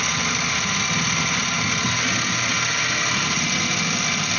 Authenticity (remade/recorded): recorded